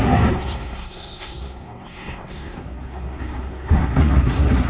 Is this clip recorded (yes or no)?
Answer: no